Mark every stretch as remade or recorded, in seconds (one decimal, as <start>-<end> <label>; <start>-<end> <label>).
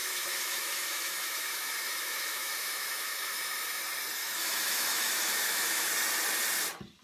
0.0-3.8 remade; 3.8-4.2 recorded; 4.2-5.9 remade; 5.9-7.0 recorded